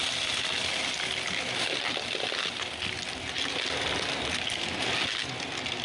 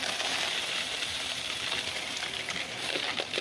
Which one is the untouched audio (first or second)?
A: first